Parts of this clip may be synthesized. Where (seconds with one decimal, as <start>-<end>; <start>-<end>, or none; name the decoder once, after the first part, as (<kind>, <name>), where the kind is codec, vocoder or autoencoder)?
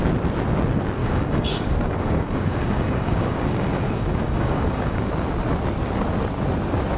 1.0-5.1 (codec, DAC)